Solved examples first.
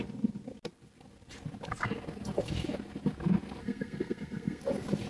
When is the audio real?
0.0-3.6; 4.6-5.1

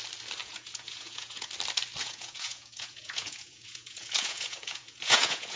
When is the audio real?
0.0-0.4; 1.5-2.0

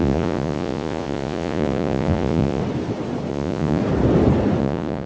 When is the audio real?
2.6-3.3; 3.8-4.6